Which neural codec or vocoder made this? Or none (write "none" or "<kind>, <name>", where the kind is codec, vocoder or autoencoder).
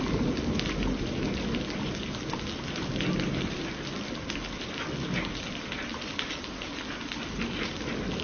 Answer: none